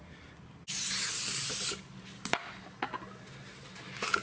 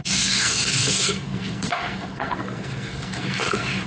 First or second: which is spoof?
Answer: second